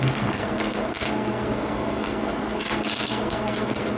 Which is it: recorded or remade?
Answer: remade